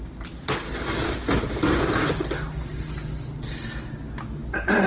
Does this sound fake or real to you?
real